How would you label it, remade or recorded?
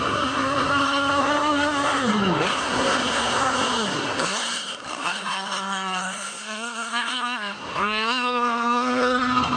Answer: remade